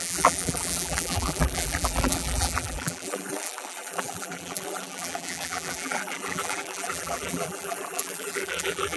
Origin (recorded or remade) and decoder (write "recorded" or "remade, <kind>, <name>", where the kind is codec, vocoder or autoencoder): remade, vocoder, BigVGAN v2